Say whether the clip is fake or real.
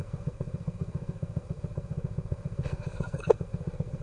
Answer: fake